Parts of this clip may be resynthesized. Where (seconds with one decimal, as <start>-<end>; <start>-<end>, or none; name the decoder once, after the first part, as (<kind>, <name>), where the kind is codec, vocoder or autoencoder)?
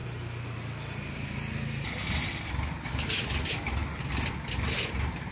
none